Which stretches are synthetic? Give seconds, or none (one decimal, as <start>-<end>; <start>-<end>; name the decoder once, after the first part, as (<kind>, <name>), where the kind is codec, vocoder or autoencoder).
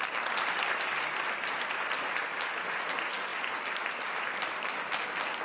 3.3-4.7 (vocoder, BigVGAN v2)